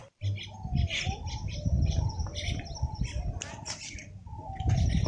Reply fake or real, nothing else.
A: real